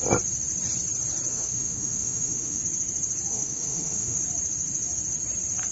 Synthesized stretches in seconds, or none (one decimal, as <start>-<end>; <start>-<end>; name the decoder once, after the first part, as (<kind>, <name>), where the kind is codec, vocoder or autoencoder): 1.3-2.6 (autoencoder, DAC-VAE); 3.3-4.2